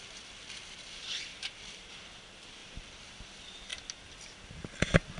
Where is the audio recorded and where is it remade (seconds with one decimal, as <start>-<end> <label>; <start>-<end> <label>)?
0.0-1.3 recorded; 1.3-1.9 remade; 1.9-2.6 recorded; 2.6-3.1 remade; 3.1-5.2 recorded